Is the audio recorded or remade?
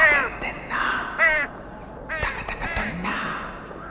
recorded